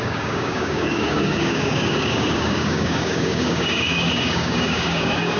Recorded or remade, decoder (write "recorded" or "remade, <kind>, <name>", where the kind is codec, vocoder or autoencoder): remade, codec, DAC